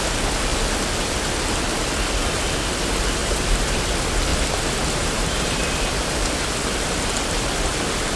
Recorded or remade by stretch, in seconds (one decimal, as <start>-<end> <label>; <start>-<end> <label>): 0.0-3.2 recorded; 3.2-3.8 remade; 3.8-4.3 recorded; 4.3-5.6 remade; 5.6-8.2 recorded